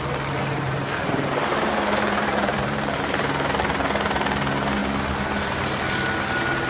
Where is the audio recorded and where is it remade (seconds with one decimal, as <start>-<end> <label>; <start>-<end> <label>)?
0.0-0.4 recorded; 0.4-3.5 remade; 3.5-6.7 recorded